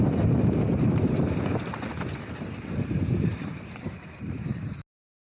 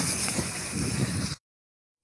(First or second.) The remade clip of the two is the second